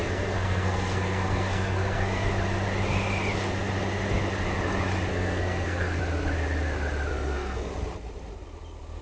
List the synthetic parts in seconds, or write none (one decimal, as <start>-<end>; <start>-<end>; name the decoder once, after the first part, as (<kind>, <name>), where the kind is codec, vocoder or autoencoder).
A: 0.0-2.3 (codec, SNAC); 5.1-6.0; 7.1-7.7